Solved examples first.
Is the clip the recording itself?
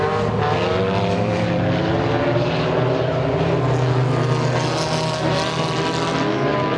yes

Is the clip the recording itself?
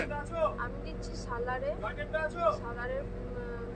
yes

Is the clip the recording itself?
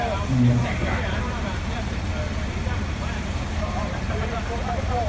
no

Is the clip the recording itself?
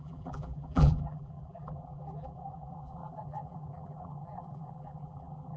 no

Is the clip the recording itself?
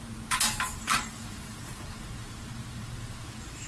no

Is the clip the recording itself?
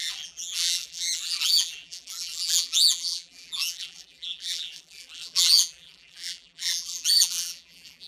no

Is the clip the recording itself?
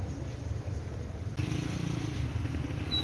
no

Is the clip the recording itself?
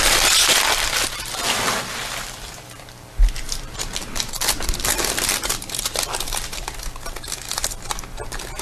no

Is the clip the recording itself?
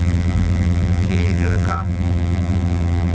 no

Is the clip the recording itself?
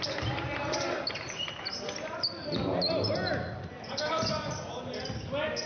yes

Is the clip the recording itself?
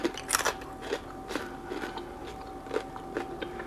yes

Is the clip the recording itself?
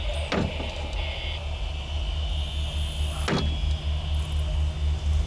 yes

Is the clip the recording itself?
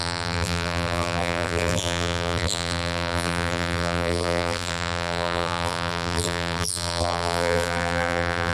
no